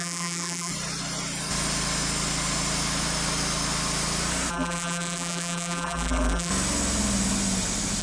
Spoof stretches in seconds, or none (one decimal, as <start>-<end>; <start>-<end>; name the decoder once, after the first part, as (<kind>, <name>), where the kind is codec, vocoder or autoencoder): 0.0-0.7 (vocoder, BigVGAN v2); 4.5-6.5